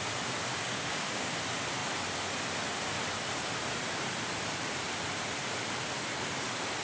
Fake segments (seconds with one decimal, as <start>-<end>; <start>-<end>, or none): 0.5-1.3